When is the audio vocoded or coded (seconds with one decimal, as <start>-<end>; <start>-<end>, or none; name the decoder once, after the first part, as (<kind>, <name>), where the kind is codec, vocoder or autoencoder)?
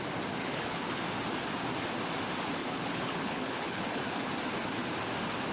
0.4-1.0 (codec, HILCodec); 2.6-4.3